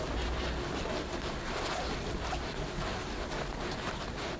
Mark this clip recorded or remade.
recorded